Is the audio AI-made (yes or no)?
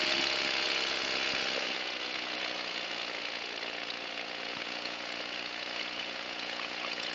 yes